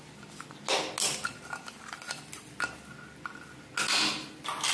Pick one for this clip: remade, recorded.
recorded